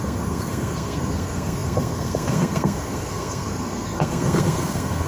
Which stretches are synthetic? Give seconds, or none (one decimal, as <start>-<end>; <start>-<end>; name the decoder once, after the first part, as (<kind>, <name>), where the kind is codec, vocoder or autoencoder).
0.0-5.1 (codec, SNAC)